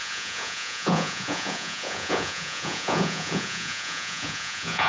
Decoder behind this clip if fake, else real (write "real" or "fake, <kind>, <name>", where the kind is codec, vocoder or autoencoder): fake, vocoder, Vocos